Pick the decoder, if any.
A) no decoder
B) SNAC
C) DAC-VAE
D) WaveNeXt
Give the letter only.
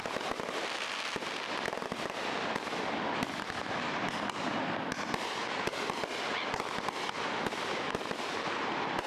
A